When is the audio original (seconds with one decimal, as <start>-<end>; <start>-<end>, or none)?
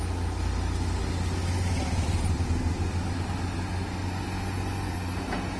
0.0-4.0; 4.9-5.6